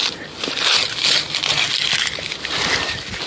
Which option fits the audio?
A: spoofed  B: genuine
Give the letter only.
A